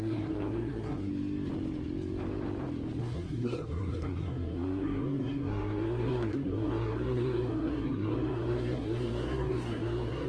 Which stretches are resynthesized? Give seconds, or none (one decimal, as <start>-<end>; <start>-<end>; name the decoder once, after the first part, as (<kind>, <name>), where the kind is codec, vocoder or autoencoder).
0.0-1.1 (codec, SNAC); 3.0-10.3